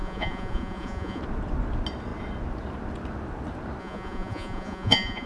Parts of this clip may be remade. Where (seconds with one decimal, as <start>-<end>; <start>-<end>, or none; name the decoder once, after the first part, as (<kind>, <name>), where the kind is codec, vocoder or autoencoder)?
0.0-1.2 (vocoder, Vocos); 3.8-5.3